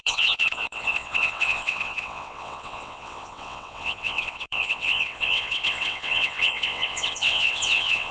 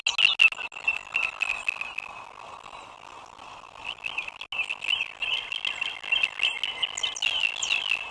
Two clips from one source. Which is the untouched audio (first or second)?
second